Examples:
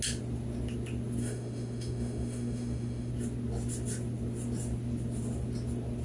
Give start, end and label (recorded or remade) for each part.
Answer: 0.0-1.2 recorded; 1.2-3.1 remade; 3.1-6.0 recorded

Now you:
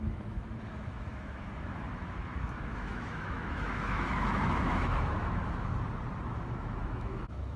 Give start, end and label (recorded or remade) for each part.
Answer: 0.0-5.7 remade; 5.7-6.3 recorded; 6.3-7.6 remade